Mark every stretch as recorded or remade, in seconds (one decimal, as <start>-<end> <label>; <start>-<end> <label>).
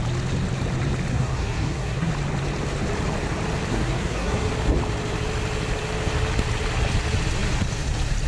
0.0-1.1 recorded; 1.1-2.1 remade; 2.1-3.7 recorded; 3.7-4.5 remade; 4.5-8.3 recorded